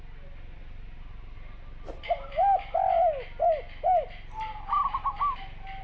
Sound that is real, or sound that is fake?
real